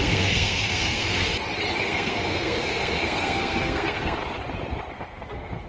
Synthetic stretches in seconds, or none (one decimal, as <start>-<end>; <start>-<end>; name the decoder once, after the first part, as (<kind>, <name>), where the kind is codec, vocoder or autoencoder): 0.0-1.3 (codec, SNAC); 1.8-4.2; 4.9-5.7